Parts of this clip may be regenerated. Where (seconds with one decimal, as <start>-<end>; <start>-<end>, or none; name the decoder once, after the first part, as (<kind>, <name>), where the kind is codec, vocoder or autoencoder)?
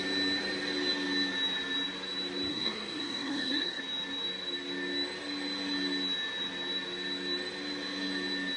2.5-3.8 (codec, SNAC)